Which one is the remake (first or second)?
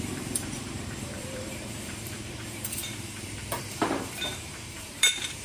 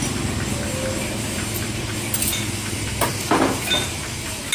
first